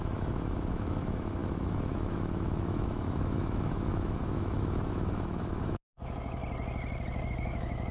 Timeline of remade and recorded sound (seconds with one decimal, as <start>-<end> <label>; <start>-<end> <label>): 0.0-6.4 remade; 6.4-7.3 recorded; 7.3-7.9 remade